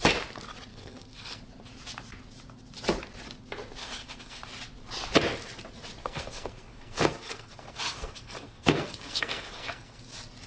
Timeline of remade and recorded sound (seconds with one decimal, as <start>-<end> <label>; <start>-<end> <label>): 0.0-0.7 recorded; 0.7-1.4 remade; 1.4-3.8 recorded; 3.8-4.4 remade; 4.4-6.0 recorded; 6.0-10.0 remade; 10.0-10.5 recorded

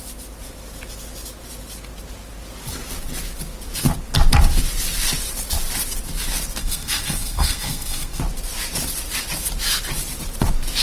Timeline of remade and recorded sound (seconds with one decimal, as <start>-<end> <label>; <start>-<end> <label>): 0.0-6.6 recorded; 6.6-8.2 remade; 8.2-10.8 recorded

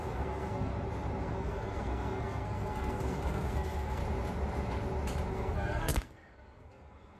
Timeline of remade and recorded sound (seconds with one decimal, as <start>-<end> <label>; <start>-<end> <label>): 0.0-0.7 remade; 0.7-1.2 recorded; 1.2-4.0 remade; 4.0-5.3 recorded; 5.3-7.2 remade

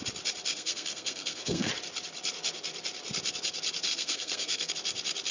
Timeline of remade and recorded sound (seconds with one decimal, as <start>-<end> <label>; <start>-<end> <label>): 0.0-0.5 recorded; 0.5-1.7 remade; 1.7-3.9 recorded; 3.9-4.7 remade; 4.7-5.3 recorded

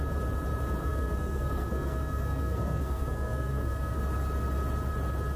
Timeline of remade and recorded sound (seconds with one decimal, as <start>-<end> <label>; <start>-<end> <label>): 0.0-0.8 recorded; 0.8-4.0 remade; 4.0-5.4 recorded